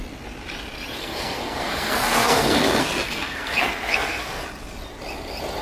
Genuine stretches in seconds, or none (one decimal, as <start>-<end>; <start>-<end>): 0.0-1.0; 4.4-5.6